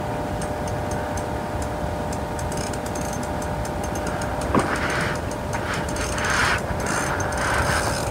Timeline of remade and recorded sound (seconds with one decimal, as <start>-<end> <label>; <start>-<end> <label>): 0.0-8.1 recorded